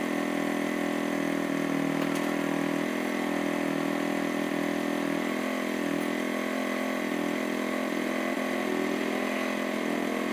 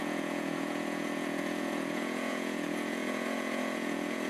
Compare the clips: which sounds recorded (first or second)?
first